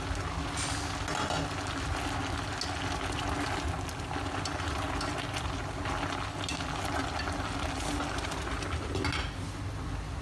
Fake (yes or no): no